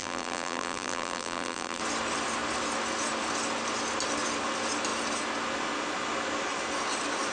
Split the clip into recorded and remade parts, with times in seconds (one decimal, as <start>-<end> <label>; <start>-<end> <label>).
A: 0.0-1.8 remade; 1.8-7.3 recorded